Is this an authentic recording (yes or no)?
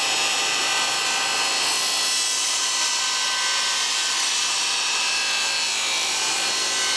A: yes